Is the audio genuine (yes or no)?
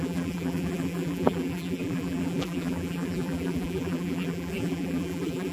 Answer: no